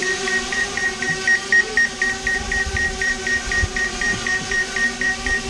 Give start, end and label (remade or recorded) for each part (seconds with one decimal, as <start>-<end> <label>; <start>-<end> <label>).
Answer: 0.0-5.5 remade